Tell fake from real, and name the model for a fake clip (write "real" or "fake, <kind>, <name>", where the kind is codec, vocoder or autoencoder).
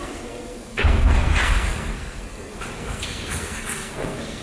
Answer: fake, codec, SNAC